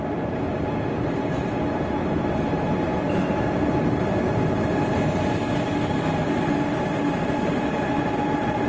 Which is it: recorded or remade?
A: recorded